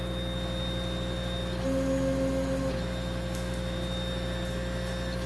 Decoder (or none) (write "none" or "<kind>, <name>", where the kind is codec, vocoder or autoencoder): none